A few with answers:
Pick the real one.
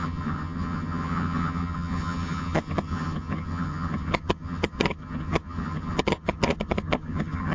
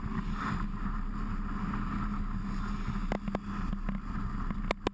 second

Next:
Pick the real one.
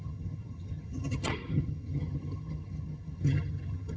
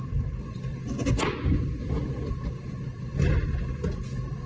second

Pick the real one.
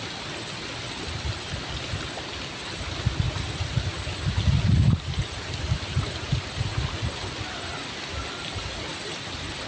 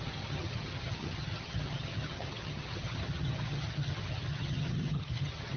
first